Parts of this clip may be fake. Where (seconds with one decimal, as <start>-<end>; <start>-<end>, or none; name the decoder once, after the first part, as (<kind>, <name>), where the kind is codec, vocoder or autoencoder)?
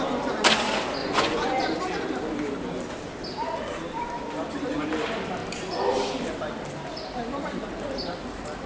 1.0-1.6 (vocoder, Vocos)